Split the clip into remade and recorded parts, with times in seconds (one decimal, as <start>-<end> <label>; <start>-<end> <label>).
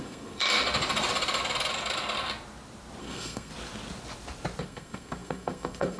0.0-0.4 remade; 0.4-3.0 recorded; 3.0-3.5 remade; 3.5-4.6 recorded; 4.6-6.0 remade